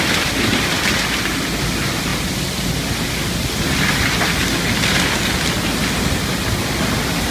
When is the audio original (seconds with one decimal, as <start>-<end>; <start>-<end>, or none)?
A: 0.0-7.3